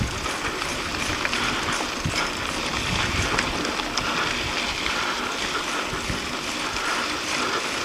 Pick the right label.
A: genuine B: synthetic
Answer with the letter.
B